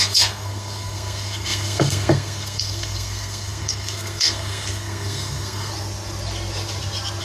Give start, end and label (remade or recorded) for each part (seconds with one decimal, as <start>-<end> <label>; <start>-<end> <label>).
0.0-5.7 remade; 5.7-7.2 recorded